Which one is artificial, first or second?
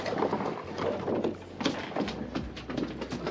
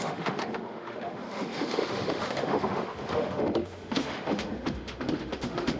second